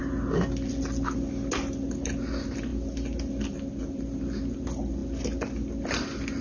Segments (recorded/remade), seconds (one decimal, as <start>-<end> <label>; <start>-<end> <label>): 0.0-6.4 recorded